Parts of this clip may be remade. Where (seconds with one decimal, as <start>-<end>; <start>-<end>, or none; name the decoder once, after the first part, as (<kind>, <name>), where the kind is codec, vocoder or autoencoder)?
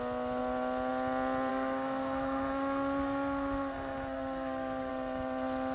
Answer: 1.5-4.9 (codec, SNAC)